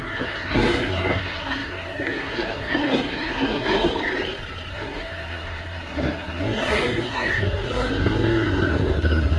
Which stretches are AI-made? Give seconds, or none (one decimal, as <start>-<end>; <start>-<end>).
0.0-3.9; 4.7-9.4